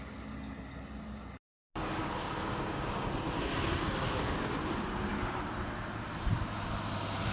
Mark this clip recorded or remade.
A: recorded